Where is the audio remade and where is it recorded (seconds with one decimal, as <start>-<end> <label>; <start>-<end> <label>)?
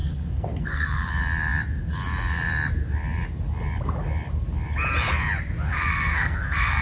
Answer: 0.0-1.1 remade; 1.1-5.7 recorded; 5.7-6.8 remade